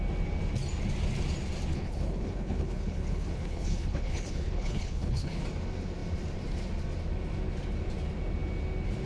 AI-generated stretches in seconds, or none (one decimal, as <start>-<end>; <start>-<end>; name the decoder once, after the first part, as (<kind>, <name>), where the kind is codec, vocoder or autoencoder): 1.7-5.4 (codec, HILCodec)